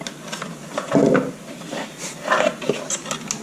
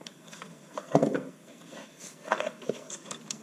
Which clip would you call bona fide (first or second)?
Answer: first